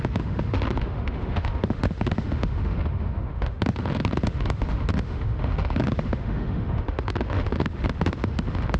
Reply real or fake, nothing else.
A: fake